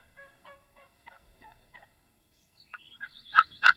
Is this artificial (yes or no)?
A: yes